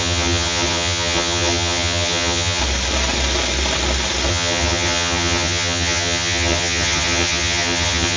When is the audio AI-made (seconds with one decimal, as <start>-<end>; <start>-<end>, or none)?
0.0-2.6; 4.3-8.2